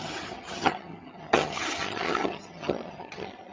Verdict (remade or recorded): remade